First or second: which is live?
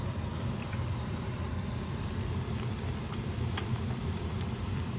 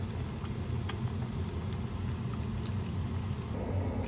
second